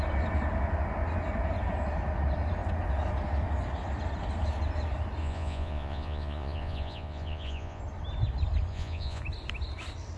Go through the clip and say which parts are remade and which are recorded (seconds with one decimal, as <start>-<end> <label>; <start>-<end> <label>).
0.0-5.2 recorded; 5.2-7.8 remade; 7.8-8.7 recorded; 8.7-9.2 remade; 9.2-10.2 recorded